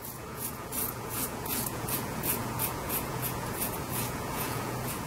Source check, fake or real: fake